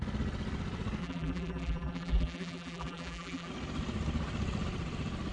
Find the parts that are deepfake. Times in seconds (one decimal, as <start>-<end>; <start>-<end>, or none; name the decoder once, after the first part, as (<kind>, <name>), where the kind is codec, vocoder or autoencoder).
1.0-3.5 (vocoder, BigVGAN v2)